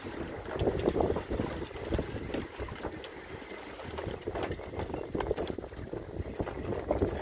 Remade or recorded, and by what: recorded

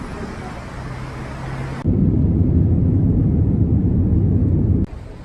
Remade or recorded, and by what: recorded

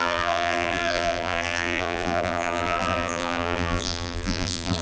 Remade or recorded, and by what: remade, vocoder, BigVGAN v2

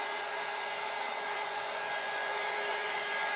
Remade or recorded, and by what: remade, vocoder, Vocos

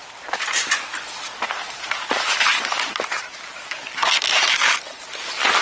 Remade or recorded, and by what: recorded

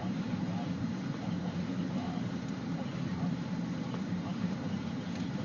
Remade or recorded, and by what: remade, vocoder, BigVGAN v2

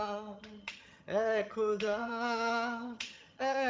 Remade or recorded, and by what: remade, vocoder, HiFi-GAN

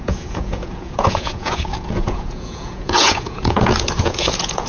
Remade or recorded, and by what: remade, vocoder, Vocos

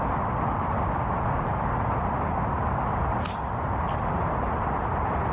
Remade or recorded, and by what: recorded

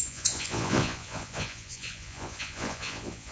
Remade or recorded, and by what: remade, vocoder, Vocos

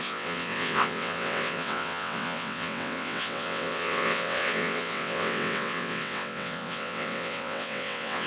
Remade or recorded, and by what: remade, vocoder, WaveNeXt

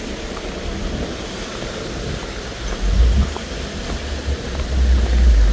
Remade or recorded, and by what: recorded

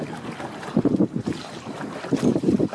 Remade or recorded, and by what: recorded